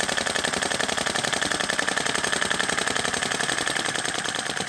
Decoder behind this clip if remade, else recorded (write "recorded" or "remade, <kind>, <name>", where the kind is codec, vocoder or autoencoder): recorded